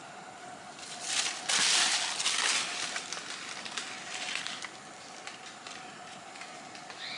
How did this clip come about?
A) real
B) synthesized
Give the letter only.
A